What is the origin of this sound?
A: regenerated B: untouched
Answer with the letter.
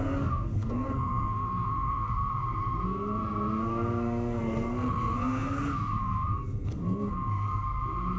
A